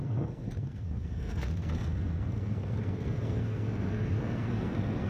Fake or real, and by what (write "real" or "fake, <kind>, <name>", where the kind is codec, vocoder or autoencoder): fake, codec, SNAC